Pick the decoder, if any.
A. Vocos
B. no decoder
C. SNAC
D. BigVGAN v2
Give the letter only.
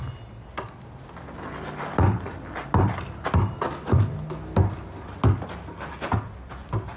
B